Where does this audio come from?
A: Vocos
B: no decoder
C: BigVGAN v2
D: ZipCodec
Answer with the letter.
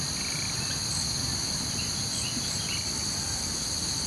B